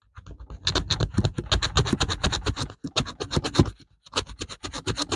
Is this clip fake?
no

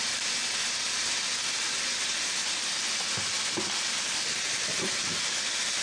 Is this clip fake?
no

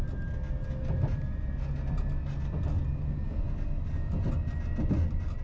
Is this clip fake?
no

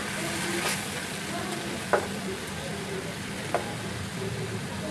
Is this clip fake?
no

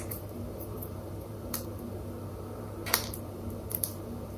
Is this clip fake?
yes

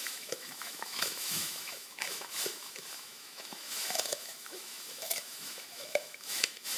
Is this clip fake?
yes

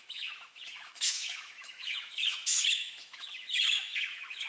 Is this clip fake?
yes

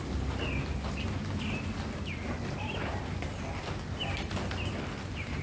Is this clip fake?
no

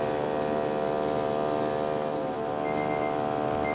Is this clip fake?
no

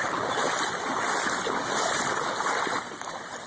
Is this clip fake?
no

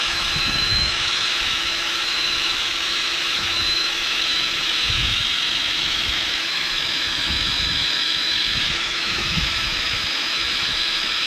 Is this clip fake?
yes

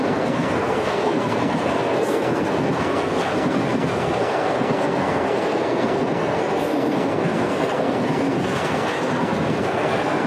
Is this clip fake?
yes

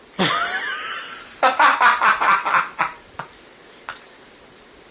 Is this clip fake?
no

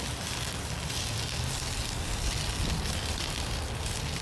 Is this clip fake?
no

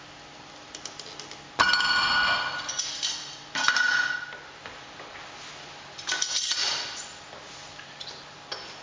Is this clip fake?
no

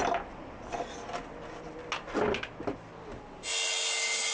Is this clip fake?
no